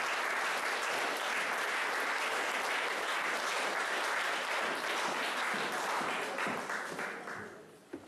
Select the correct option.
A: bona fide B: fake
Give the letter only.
A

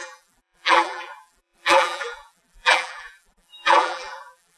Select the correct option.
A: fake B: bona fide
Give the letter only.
A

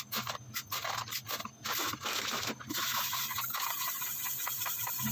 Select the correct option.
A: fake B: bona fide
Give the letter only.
B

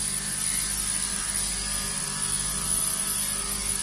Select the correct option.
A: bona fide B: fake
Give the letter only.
A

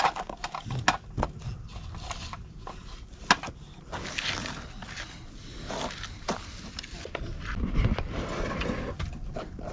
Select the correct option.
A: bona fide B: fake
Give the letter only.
A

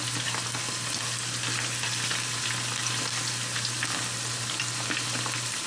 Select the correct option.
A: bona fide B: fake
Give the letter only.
A